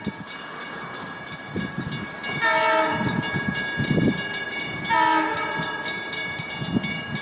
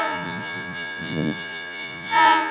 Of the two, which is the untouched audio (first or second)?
first